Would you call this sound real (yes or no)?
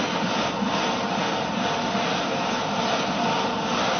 yes